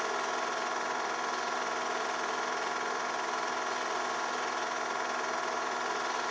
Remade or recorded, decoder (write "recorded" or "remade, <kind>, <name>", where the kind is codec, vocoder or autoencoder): recorded